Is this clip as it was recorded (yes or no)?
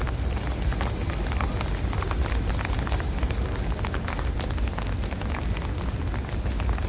yes